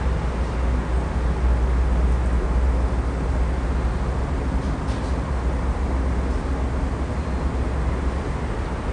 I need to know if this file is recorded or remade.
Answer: recorded